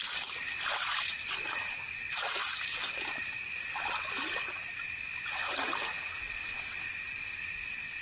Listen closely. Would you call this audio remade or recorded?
recorded